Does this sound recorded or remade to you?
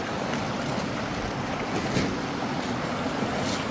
recorded